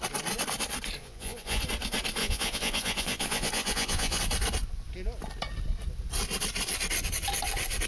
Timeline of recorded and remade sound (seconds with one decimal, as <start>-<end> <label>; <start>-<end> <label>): 0.0-1.0 recorded; 1.0-1.6 remade; 1.6-2.2 recorded; 2.2-4.2 remade; 4.2-7.9 recorded